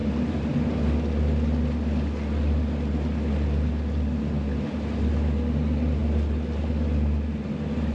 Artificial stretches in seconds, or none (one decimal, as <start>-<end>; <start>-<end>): none